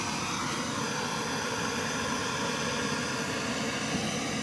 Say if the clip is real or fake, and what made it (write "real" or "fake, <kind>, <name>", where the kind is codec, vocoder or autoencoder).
real